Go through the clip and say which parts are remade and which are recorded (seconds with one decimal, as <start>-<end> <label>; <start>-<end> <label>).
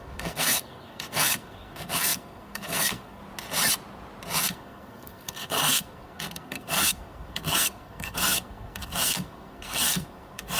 0.0-3.2 remade; 3.2-4.4 recorded; 4.4-10.6 remade